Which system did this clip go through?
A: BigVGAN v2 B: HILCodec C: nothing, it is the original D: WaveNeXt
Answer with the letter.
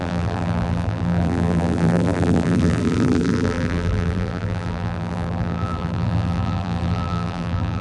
A